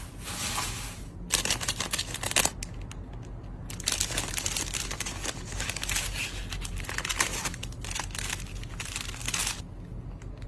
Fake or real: real